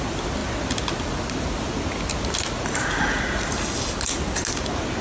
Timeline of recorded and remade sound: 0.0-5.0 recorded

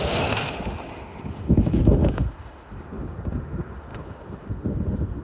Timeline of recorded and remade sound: 0.0-5.2 remade

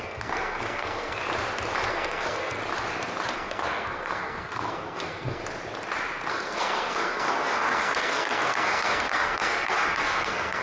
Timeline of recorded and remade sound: 0.0-1.2 remade; 1.2-1.9 recorded; 1.9-2.6 remade; 2.6-3.3 recorded; 3.3-5.4 remade; 5.4-6.3 recorded; 6.3-10.6 remade

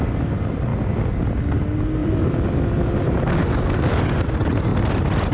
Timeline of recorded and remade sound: 0.0-2.0 recorded; 2.0-3.2 remade; 3.2-5.3 recorded

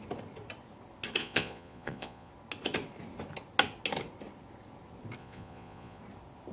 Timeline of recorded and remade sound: 0.0-1.2 recorded; 1.2-2.3 remade; 2.3-5.2 recorded; 5.2-6.0 remade; 6.0-6.5 recorded

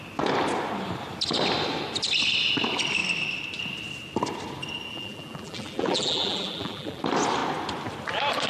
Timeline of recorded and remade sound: 0.0-4.9 recorded; 4.9-7.0 remade; 7.0-8.5 recorded